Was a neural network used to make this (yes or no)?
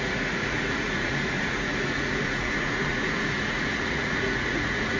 yes